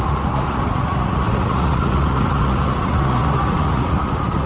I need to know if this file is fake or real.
fake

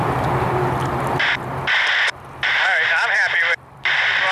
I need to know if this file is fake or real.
fake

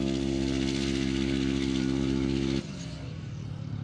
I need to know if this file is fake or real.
real